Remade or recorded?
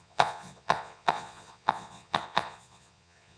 remade